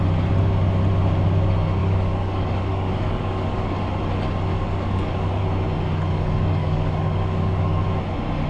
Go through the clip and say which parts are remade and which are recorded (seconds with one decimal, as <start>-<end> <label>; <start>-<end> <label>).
0.0-1.8 recorded; 1.8-3.8 remade; 3.8-4.5 recorded; 4.5-5.4 remade; 5.4-6.1 recorded; 6.1-7.8 remade; 7.8-8.5 recorded